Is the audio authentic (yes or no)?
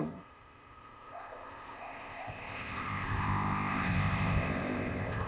no